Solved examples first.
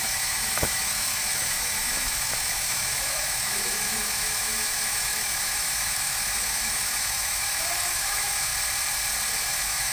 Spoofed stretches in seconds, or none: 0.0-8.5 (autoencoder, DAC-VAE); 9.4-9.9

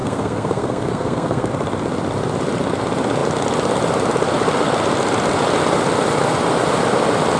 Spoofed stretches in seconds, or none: 0.0-1.5 (codec, SNAC)

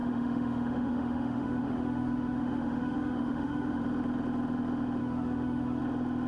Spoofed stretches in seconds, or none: 0.0-3.8 (autoencoder, DAC-VAE); 5.0-5.8

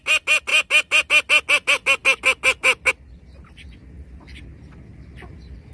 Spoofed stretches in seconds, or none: none

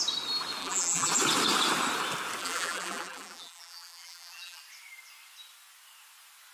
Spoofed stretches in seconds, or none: 0.6-1.1 (vocoder, BigVGAN v2); 2.4-4.6